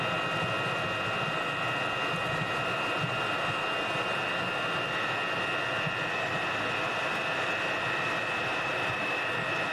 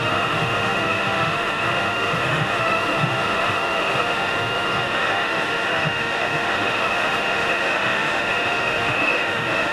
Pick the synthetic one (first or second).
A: second